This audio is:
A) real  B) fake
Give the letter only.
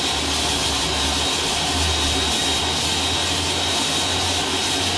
A